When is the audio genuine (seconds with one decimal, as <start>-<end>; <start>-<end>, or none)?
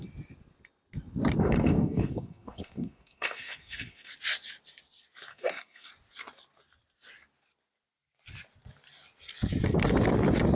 0.0-1.4; 4.1-5.3; 5.9-10.5